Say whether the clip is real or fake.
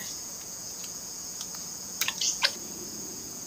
fake